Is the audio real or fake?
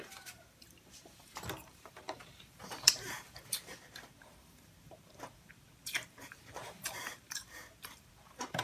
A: fake